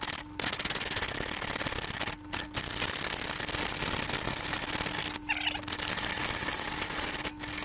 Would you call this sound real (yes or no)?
yes